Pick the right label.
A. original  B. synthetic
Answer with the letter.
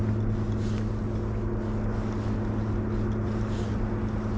A